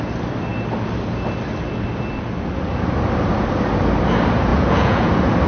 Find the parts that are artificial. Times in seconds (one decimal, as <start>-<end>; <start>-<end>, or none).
4.5-5.1